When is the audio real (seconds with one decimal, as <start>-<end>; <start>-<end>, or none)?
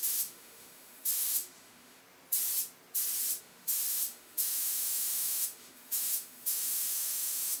2.0-3.4